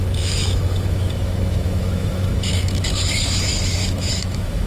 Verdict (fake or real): fake